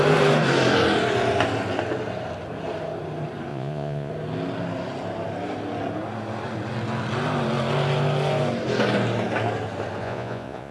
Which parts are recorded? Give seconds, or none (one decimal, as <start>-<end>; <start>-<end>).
0.0-3.5; 4.1-10.0